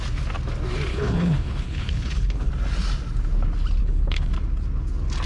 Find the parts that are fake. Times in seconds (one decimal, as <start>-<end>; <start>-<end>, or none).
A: 0.9-2.5; 3.8-4.3